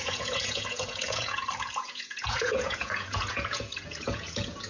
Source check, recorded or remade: remade